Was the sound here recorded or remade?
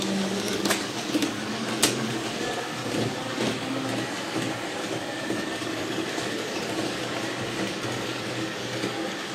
remade